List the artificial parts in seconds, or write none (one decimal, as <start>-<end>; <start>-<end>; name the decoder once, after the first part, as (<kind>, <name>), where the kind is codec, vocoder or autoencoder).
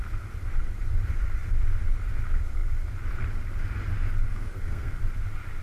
4.3-5.0 (codec, SNAC)